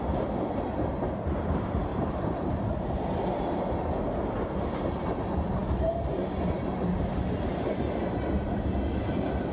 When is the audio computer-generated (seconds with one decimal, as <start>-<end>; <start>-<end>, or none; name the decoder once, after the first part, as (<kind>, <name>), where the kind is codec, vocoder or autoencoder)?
none